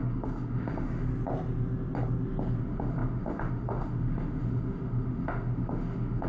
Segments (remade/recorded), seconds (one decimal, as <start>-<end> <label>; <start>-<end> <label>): 0.0-1.1 remade; 1.1-2.6 recorded; 2.6-6.3 remade

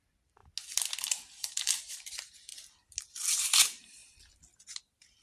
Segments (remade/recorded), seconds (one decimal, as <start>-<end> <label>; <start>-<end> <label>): 0.0-0.4 remade; 0.4-1.0 recorded; 1.0-2.5 remade; 2.5-3.0 recorded; 3.0-4.0 remade; 4.0-4.8 recorded; 4.8-5.2 remade

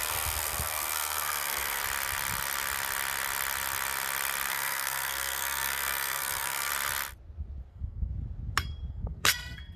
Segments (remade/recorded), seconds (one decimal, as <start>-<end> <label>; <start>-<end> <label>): 0.0-1.8 remade; 1.8-4.5 recorded; 4.5-6.7 remade; 6.7-7.7 recorded; 7.7-8.1 remade; 8.1-8.9 recorded; 8.9-9.8 remade

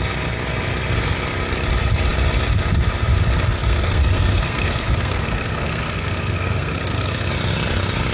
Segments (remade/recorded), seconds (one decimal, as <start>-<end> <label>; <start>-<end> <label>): 0.0-3.6 recorded; 3.6-7.3 remade; 7.3-8.1 recorded